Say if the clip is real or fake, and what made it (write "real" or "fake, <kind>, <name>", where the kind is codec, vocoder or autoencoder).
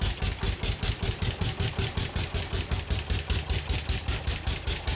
real